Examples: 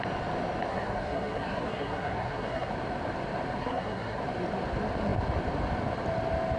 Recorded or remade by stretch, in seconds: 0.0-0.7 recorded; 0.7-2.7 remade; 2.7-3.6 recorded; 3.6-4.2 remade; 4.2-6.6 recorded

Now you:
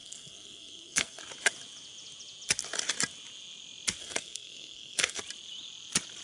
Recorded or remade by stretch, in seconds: 0.0-1.2 remade; 1.2-4.0 recorded; 4.0-5.2 remade; 5.2-6.2 recorded

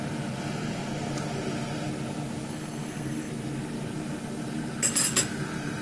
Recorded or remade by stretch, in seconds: 0.0-2.5 recorded; 2.5-3.3 remade; 3.3-5.8 recorded

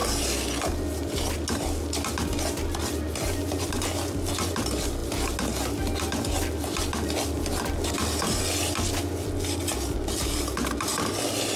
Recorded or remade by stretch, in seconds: 0.0-11.6 recorded